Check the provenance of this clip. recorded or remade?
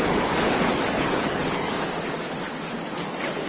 recorded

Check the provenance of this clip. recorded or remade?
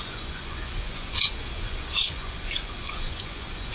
remade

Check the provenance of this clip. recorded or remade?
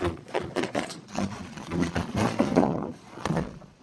remade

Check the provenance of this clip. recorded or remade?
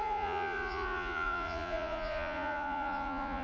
remade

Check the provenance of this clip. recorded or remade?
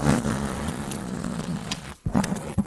remade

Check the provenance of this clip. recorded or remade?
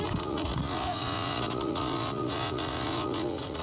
remade